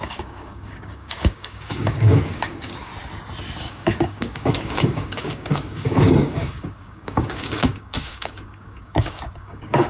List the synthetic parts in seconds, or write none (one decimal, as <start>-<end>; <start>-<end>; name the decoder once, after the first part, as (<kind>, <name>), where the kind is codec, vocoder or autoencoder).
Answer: 0.0-2.9 (codec, DAC); 3.6-9.9